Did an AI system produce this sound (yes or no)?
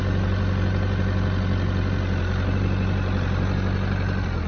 no